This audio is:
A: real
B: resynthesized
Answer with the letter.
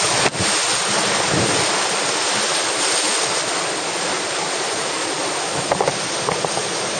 A